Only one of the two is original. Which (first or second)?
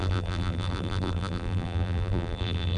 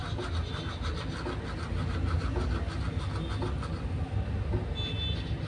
second